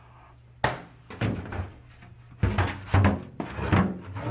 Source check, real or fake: real